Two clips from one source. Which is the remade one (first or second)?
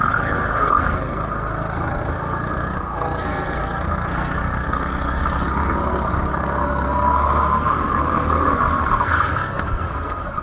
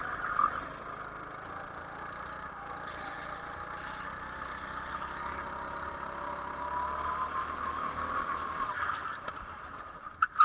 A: first